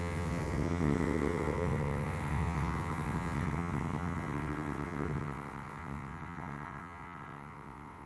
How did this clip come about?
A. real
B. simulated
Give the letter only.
B